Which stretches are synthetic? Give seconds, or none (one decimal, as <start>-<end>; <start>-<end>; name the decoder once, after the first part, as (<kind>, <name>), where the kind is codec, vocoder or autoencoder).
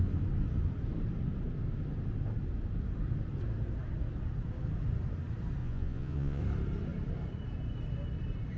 5.6-6.4 (vocoder, Vocos)